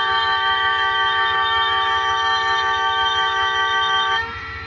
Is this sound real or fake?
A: fake